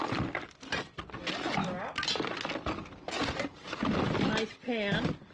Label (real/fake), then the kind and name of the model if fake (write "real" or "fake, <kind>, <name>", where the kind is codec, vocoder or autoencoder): real